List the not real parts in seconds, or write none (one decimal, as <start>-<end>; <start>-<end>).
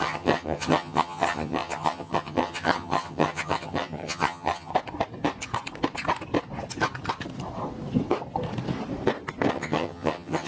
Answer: 0.0-4.7; 9.5-10.5